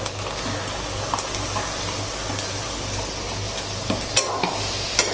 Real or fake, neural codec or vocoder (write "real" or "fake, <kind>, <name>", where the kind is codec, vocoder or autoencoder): real